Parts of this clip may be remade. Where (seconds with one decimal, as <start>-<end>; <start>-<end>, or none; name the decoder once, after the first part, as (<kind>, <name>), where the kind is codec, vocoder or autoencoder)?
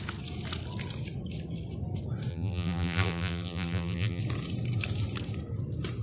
2.3-4.2 (vocoder, BigVGAN v2)